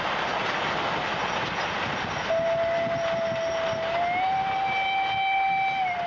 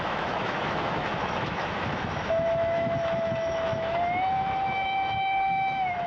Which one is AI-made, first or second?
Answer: second